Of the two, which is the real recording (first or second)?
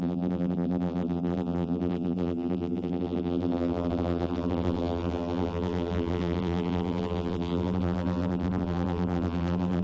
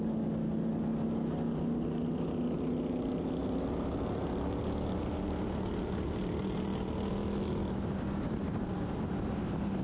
second